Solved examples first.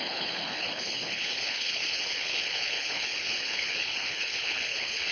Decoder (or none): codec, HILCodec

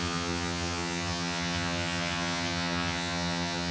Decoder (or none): vocoder, HiFi-GAN